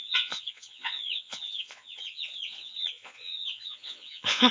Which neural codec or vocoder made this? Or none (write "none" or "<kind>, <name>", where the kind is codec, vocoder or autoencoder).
vocoder, Vocos